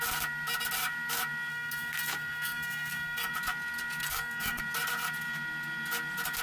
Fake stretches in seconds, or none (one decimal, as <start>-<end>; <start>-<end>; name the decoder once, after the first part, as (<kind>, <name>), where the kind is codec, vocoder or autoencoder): 1.5-3.3 (codec, SNAC); 4.0-4.6